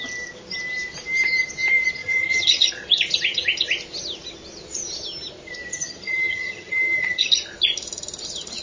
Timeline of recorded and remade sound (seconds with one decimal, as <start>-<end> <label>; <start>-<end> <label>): 0.0-2.0 recorded; 2.0-2.7 remade; 2.7-5.7 recorded; 5.7-7.3 remade; 7.3-8.6 recorded